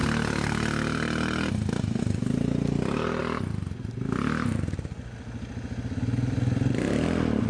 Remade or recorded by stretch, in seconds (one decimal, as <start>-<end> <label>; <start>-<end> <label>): 0.0-2.0 recorded; 2.0-3.2 remade; 3.2-7.5 recorded